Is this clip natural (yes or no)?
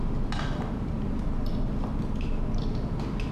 yes